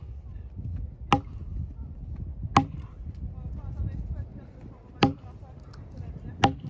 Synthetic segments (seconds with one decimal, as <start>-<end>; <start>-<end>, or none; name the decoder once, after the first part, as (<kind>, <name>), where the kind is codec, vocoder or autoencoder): none